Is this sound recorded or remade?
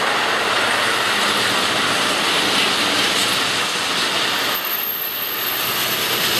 recorded